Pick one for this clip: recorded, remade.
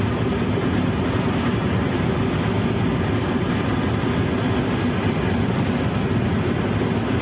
recorded